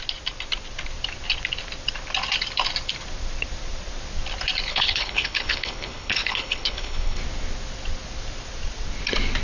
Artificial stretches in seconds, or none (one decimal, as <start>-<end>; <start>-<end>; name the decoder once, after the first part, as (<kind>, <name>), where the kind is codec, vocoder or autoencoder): 4.7-7.2 (codec, HILCodec)